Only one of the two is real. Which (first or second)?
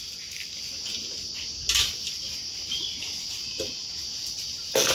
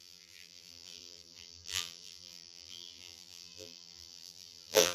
first